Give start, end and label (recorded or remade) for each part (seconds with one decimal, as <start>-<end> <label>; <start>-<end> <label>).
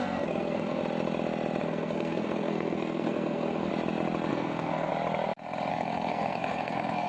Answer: 0.0-0.8 remade; 0.8-1.6 recorded; 1.6-3.7 remade; 3.7-4.3 recorded; 4.3-4.9 remade; 4.9-5.7 recorded; 5.7-7.1 remade